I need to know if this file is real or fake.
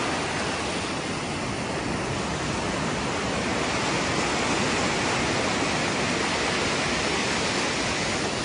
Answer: real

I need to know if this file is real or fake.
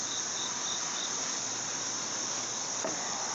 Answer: real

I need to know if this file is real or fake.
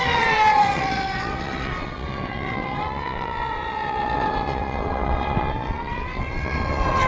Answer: fake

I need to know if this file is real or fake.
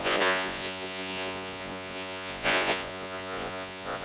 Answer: fake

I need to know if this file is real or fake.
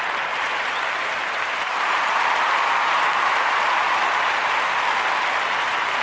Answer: fake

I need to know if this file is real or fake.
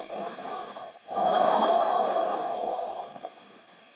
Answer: fake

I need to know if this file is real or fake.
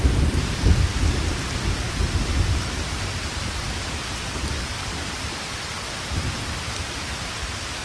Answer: real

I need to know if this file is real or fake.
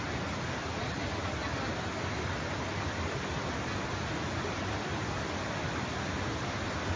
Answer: real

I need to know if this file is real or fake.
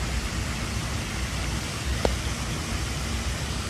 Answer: real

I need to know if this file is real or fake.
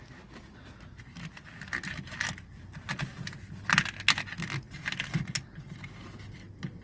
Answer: real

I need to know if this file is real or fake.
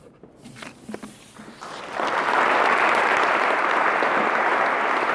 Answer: real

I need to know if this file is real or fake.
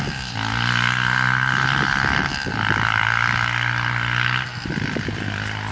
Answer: real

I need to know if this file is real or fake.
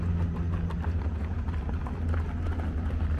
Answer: real